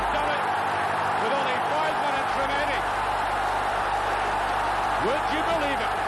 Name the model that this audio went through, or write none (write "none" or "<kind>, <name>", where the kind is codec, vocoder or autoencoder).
none